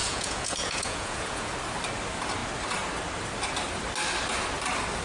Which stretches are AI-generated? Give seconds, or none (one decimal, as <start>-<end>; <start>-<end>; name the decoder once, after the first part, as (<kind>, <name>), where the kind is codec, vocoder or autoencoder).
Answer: 0.0-1.5 (vocoder, Vocos)